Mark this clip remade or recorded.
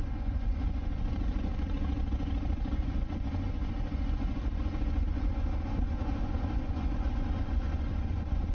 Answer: remade